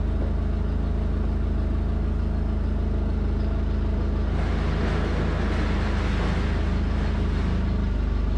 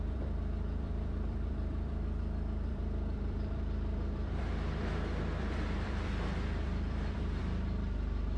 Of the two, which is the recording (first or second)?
first